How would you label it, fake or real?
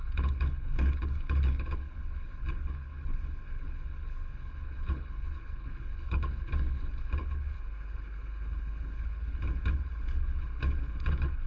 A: fake